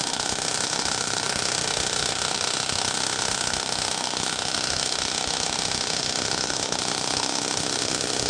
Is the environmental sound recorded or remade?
remade